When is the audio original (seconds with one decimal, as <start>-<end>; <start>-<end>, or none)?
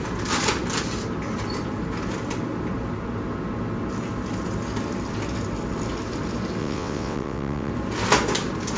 0.0-6.6; 7.7-8.8